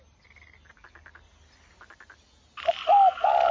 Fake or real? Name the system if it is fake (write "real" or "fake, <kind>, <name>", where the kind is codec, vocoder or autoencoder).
real